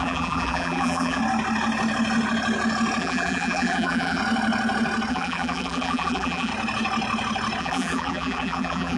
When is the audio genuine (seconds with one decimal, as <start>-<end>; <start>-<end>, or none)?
1.2-3.0; 4.2-5.1; 6.5-7.6